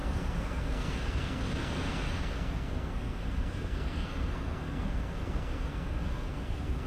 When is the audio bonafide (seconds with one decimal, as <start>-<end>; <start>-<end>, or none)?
none